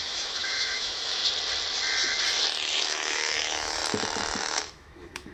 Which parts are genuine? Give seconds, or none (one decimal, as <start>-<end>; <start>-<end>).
1.2-2.8; 3.8-4.4